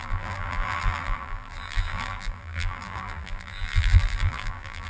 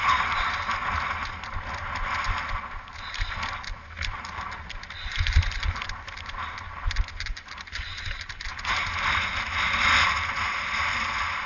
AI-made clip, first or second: first